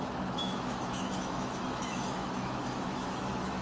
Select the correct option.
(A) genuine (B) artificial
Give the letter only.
B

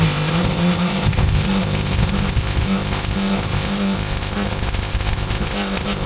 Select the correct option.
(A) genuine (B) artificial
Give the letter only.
B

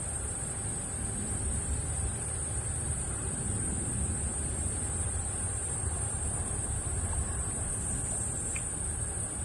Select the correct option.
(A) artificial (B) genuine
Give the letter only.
A